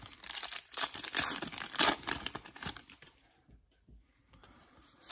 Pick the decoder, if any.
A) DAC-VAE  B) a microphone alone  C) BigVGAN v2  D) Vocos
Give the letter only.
C